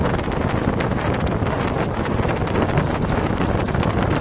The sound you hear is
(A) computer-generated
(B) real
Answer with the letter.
B